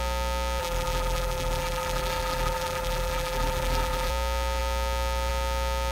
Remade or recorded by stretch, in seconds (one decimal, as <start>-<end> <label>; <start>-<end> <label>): 0.0-0.6 recorded; 0.6-4.1 remade; 4.1-5.9 recorded